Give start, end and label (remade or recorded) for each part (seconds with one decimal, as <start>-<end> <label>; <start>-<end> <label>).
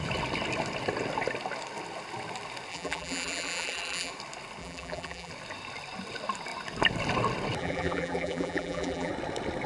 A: 0.0-2.7 recorded; 2.7-4.1 remade; 4.1-4.6 recorded; 4.6-5.3 remade; 5.3-7.6 recorded; 7.6-9.1 remade; 9.1-9.7 recorded